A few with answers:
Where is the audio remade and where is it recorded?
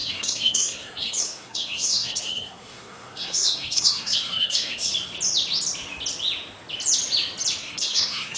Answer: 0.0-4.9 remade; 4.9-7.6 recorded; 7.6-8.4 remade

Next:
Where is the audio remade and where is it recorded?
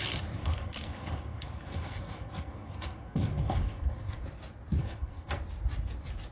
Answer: 0.0-0.4 recorded; 0.4-4.2 remade; 4.2-4.8 recorded; 4.8-5.4 remade; 5.4-6.3 recorded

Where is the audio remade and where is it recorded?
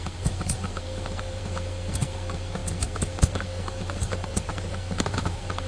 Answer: 0.0-5.7 remade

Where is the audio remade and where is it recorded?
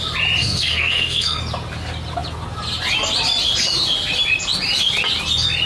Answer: 0.0-0.4 recorded; 0.4-1.4 remade; 1.4-5.7 recorded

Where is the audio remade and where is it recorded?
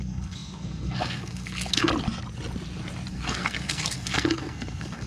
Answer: 0.0-1.9 remade; 1.9-3.1 recorded; 3.1-5.1 remade